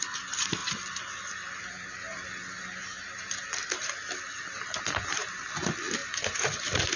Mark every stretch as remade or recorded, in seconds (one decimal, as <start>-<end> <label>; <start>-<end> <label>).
0.0-7.0 recorded

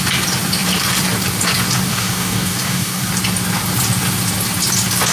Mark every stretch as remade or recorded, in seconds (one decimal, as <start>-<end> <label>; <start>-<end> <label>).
0.0-1.9 recorded; 1.9-3.0 remade; 3.0-5.1 recorded

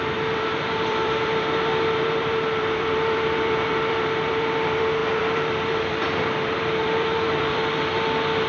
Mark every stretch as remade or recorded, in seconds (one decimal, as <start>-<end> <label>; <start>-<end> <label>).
0.0-8.5 remade

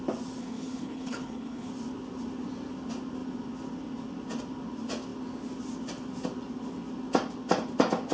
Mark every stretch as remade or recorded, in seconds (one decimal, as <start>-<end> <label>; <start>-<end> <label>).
0.0-0.4 recorded; 0.4-1.7 remade; 1.7-8.1 recorded

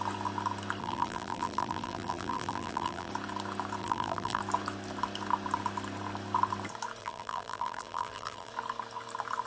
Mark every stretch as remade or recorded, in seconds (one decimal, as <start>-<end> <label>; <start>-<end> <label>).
0.0-0.8 recorded; 0.8-3.1 remade; 3.1-3.8 recorded; 3.8-4.4 remade; 4.4-7.0 recorded; 7.0-8.5 remade; 8.5-9.5 recorded

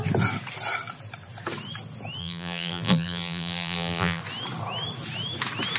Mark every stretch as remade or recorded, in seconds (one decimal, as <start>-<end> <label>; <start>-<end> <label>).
0.0-2.2 recorded; 2.2-4.2 remade; 4.2-5.8 recorded

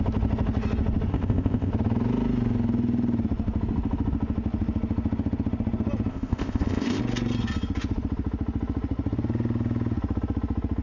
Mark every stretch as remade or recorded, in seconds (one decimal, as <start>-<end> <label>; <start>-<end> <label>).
0.0-1.1 recorded; 1.1-1.7 remade; 1.7-6.1 recorded; 6.1-7.0 remade; 7.0-10.8 recorded